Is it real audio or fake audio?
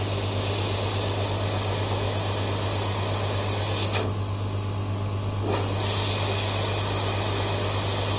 real